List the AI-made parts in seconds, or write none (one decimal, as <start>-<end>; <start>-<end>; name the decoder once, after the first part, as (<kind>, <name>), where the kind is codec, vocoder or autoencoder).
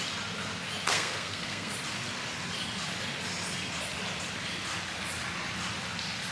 0.9-1.7 (codec, SNAC)